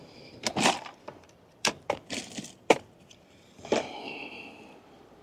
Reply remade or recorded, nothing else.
remade